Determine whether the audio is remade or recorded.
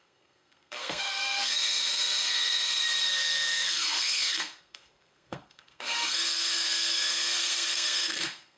remade